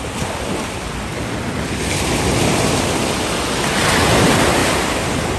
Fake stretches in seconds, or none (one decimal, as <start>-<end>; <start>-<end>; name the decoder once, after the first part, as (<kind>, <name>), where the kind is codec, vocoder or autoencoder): none